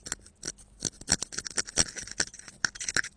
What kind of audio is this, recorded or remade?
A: recorded